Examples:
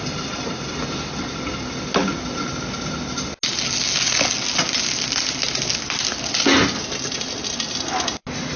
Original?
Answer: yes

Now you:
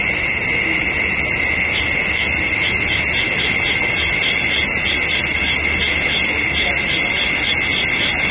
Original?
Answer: yes